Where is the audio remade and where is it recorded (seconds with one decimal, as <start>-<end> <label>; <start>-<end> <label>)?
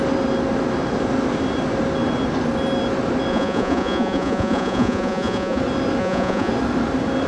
0.0-3.3 recorded; 3.3-5.6 remade; 5.6-6.0 recorded; 6.0-6.5 remade; 6.5-7.3 recorded